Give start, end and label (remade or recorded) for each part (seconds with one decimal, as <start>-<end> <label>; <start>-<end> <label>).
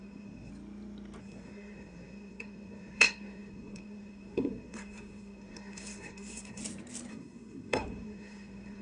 0.0-0.5 remade; 0.5-1.2 recorded; 1.2-6.6 remade; 6.6-7.1 recorded; 7.1-8.8 remade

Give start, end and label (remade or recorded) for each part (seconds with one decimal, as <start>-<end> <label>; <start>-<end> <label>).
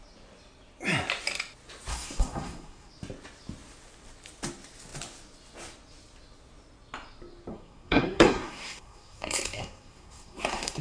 0.0-1.9 recorded; 1.9-2.9 remade; 2.9-7.5 recorded; 7.5-10.8 remade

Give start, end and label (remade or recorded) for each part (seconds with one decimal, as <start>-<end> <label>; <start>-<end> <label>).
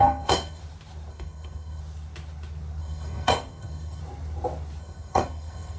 0.0-0.6 remade; 0.6-1.1 recorded; 1.1-1.8 remade; 1.8-2.8 recorded; 2.8-4.0 remade; 4.0-4.8 recorded; 4.8-5.8 remade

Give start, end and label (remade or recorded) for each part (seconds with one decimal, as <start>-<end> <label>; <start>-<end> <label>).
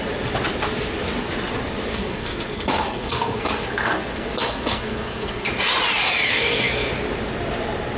0.0-1.9 recorded; 1.9-5.5 remade; 5.5-6.3 recorded; 6.3-6.9 remade; 6.9-8.0 recorded